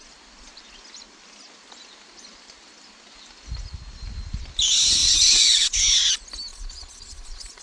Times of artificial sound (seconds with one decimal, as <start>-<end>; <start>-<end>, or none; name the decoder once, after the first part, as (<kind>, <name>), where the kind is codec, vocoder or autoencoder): 5.0-6.1 (vocoder, Vocos); 6.5-7.6